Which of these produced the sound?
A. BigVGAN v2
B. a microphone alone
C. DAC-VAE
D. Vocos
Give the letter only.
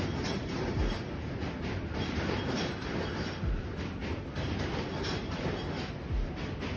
B